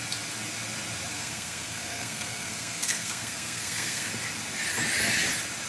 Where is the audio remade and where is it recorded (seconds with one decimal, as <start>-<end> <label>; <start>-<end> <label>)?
0.0-1.1 recorded; 1.1-4.1 remade; 4.1-5.7 recorded

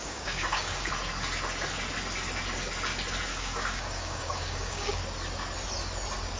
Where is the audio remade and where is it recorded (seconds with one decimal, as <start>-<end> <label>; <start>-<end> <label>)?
0.0-0.9 remade; 0.9-3.3 recorded; 3.3-5.0 remade; 5.0-6.4 recorded

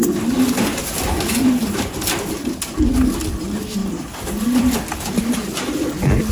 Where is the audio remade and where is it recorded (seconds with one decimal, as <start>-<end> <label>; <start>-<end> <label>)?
0.0-0.7 recorded; 0.7-2.1 remade; 2.1-3.8 recorded; 3.8-5.1 remade; 5.1-6.3 recorded

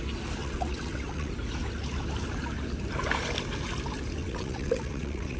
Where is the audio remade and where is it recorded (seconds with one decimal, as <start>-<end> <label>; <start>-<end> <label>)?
0.0-0.4 recorded; 0.4-1.3 remade; 1.3-4.2 recorded; 4.2-5.4 remade

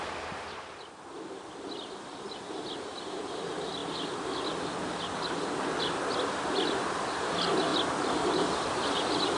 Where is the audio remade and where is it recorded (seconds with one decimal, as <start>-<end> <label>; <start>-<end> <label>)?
0.0-9.4 recorded